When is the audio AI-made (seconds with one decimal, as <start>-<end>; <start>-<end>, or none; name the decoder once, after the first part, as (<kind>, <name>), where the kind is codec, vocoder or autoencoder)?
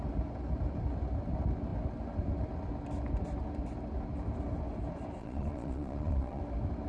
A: 5.2-6.4 (vocoder, Vocos)